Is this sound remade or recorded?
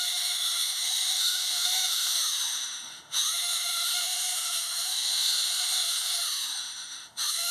remade